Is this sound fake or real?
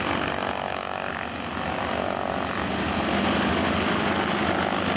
real